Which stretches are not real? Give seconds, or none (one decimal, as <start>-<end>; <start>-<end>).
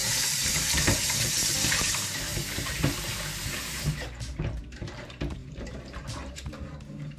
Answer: 0.0-7.2